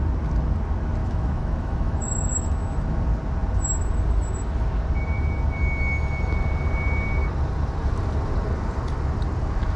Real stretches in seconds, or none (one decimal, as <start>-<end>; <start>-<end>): 0.0-1.0; 2.5-9.8